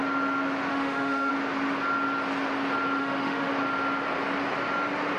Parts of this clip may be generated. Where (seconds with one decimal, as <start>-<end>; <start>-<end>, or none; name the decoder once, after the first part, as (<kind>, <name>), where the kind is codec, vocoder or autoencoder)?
0.7-1.3 (autoencoder, DAC-VAE); 3.0-3.5